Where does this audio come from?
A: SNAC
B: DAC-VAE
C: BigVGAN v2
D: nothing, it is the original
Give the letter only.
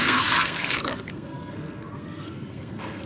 A